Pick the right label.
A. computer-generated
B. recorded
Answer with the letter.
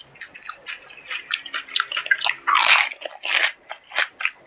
B